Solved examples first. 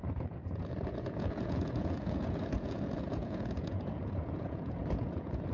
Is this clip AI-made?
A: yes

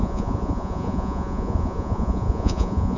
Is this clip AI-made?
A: yes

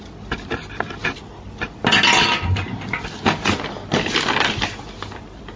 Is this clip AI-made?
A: no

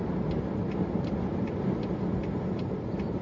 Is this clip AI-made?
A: no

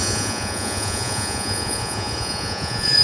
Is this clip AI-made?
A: yes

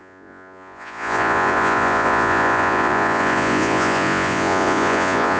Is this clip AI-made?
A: yes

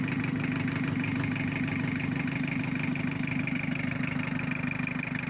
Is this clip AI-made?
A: no